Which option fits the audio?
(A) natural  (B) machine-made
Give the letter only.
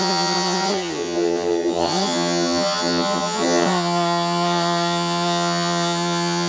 B